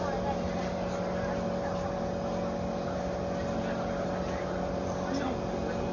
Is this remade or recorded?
recorded